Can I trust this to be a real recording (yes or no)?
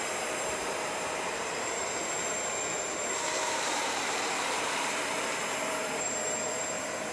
no